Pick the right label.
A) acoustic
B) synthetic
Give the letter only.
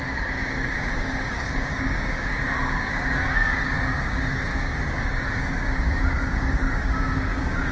B